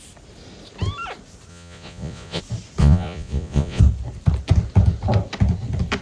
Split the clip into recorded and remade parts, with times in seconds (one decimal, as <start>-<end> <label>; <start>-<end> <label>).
0.0-1.5 recorded; 1.5-2.4 remade; 2.4-2.8 recorded; 2.8-3.8 remade; 3.8-6.0 recorded